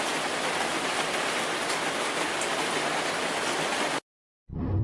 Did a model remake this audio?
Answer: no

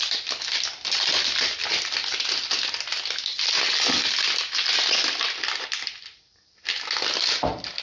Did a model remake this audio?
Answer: no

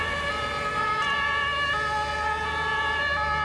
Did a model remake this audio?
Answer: no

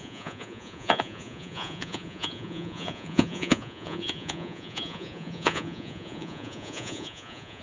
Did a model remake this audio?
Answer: yes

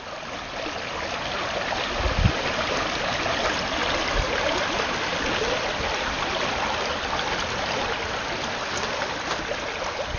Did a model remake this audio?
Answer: no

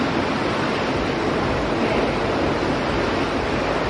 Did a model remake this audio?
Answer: no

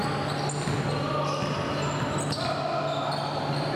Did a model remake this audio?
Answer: no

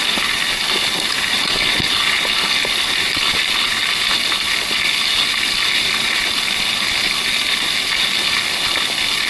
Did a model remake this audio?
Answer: no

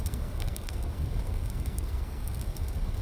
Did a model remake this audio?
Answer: yes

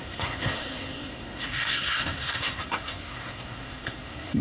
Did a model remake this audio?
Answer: yes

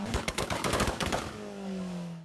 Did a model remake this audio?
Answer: yes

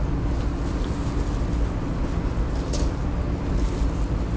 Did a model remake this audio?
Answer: no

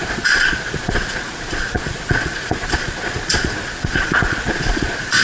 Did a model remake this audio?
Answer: yes